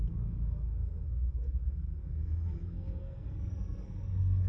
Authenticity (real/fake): fake